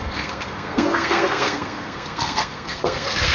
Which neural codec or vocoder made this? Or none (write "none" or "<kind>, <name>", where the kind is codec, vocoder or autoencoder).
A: codec, SNAC